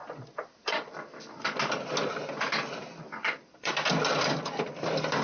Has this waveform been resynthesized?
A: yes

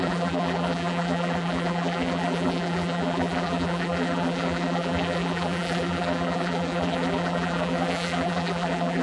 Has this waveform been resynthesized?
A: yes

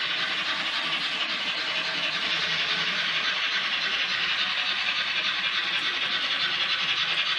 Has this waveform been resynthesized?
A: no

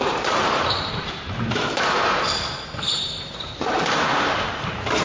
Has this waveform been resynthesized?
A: yes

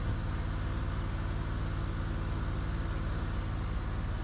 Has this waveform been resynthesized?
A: no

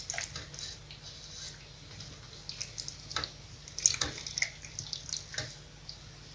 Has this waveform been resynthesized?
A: no